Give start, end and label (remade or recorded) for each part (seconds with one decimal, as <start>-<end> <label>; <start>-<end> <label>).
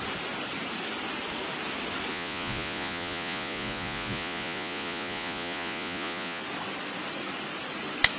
0.0-2.1 recorded; 2.1-6.4 remade; 6.4-8.2 recorded